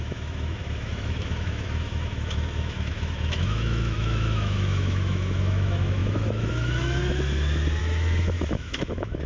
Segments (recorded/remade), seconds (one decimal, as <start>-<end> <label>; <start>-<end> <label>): 0.0-7.0 remade; 7.0-7.8 recorded; 7.8-9.3 remade

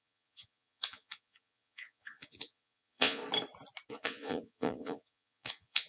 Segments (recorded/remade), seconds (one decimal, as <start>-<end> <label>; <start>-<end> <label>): 0.0-3.2 remade; 3.2-3.9 recorded; 3.9-5.9 remade

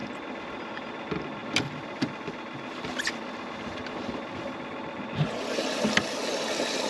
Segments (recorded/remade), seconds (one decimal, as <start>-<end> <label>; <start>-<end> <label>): 0.0-6.9 recorded

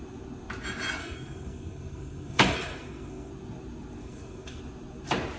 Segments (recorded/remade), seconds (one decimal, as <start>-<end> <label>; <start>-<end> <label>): 0.0-1.0 recorded; 1.0-3.3 remade; 3.3-4.0 recorded; 4.0-4.6 remade; 4.6-5.4 recorded

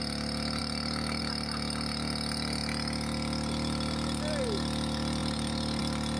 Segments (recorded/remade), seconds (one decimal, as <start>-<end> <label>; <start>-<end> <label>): 0.0-0.6 recorded; 0.6-1.2 remade; 1.2-5.2 recorded; 5.2-5.8 remade; 5.8-6.2 recorded